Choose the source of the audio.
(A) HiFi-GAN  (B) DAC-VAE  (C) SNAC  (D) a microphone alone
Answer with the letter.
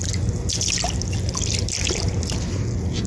D